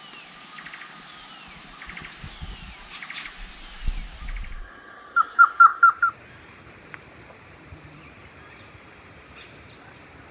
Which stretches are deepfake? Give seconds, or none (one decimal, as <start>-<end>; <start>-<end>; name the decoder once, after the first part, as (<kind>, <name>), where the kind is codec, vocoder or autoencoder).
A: none